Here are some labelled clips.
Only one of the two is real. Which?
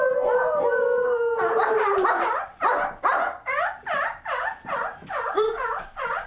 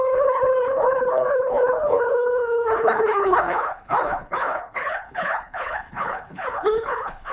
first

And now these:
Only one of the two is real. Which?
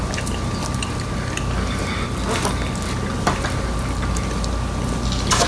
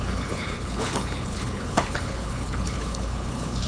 first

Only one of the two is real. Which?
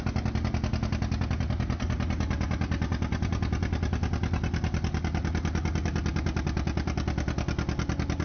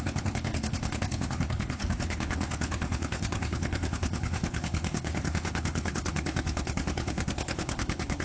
first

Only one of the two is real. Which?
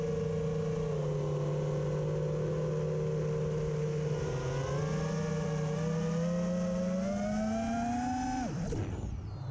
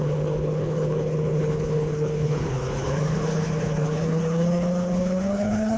first